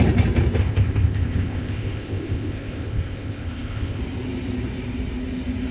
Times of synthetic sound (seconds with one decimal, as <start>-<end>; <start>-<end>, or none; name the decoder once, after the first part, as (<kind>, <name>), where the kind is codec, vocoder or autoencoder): 0.6-4.0 (codec, ZipCodec)